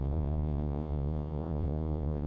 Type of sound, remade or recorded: remade